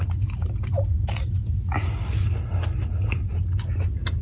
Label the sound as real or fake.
real